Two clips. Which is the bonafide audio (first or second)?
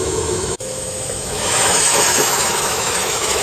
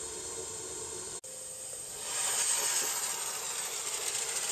second